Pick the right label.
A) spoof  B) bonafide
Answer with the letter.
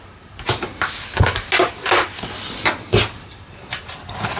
B